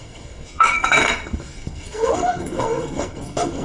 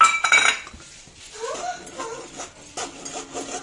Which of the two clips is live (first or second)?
second